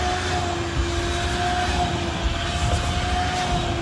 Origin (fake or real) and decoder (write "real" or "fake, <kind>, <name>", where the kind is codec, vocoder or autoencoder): real